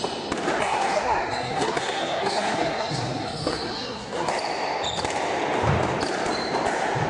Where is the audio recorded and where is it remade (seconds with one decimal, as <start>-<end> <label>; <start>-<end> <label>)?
0.0-0.6 recorded; 0.6-4.3 remade; 4.3-7.1 recorded